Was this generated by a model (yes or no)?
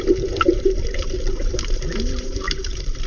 yes